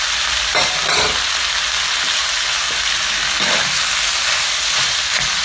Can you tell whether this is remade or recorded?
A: recorded